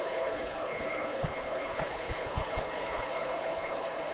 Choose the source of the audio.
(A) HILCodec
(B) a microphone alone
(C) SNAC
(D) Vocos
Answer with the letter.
A